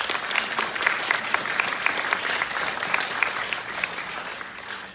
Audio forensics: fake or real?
real